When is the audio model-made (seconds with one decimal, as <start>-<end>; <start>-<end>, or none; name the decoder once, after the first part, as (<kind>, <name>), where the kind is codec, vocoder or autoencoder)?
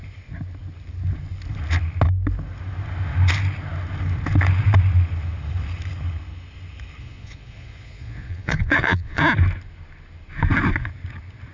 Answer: 7.0-9.2 (vocoder, Vocos)